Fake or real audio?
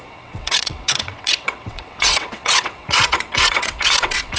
fake